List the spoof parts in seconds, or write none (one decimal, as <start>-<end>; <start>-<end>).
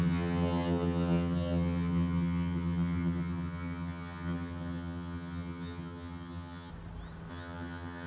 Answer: 0.0-6.7; 7.3-8.1